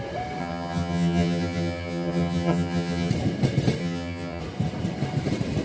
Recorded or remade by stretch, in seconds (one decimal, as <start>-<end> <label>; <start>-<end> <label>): 0.0-0.4 recorded; 0.4-3.1 remade; 3.1-3.8 recorded; 3.8-4.4 remade; 4.4-5.6 recorded